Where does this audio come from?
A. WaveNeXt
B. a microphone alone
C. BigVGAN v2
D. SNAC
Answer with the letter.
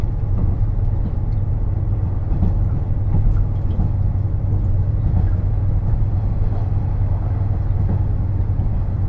B